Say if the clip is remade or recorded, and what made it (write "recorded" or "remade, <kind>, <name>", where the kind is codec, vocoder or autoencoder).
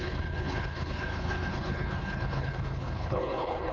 remade, codec, HILCodec